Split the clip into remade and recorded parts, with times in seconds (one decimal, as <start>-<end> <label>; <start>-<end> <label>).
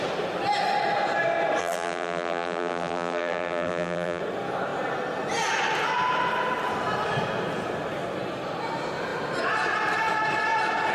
0.0-1.6 recorded; 1.6-4.2 remade; 4.2-10.9 recorded